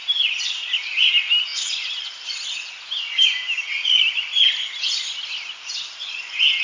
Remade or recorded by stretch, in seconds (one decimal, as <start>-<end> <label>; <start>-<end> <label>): 0.0-6.6 recorded

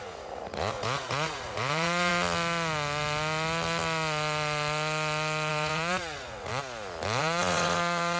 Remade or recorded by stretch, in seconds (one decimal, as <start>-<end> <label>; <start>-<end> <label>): 0.0-2.1 remade; 2.1-5.5 recorded; 5.5-6.5 remade; 6.5-7.2 recorded; 7.2-8.2 remade

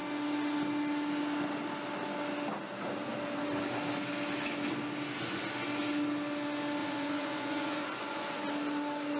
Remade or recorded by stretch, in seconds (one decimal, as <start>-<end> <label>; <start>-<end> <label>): 0.0-6.8 recorded; 6.8-8.5 remade; 8.5-9.2 recorded

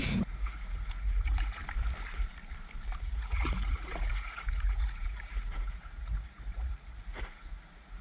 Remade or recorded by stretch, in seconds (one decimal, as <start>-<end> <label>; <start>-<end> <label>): 0.0-1.6 remade; 1.6-3.0 recorded; 3.0-8.0 remade

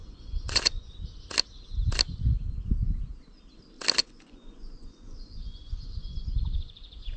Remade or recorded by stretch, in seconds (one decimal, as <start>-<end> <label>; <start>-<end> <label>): 0.0-0.9 remade; 0.9-4.0 recorded; 4.0-7.2 remade